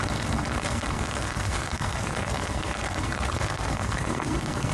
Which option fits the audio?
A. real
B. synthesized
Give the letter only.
B